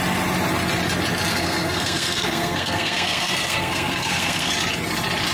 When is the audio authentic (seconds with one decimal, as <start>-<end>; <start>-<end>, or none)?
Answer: 0.0-1.3; 4.5-5.3